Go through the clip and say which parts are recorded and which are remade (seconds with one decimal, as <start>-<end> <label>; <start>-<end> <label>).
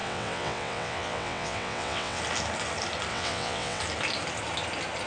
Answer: 0.0-2.2 remade; 2.2-3.1 recorded; 3.1-3.8 remade; 3.8-5.1 recorded